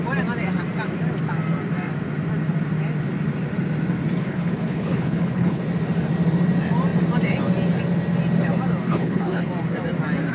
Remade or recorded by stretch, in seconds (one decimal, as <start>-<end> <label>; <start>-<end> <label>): 0.0-4.2 recorded; 4.2-5.6 remade; 5.6-8.9 recorded; 8.9-9.5 remade; 9.5-10.3 recorded